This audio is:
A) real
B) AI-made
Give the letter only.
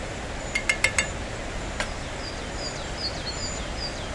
A